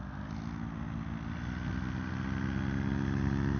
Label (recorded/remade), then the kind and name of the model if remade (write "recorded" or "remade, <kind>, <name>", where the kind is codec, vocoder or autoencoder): recorded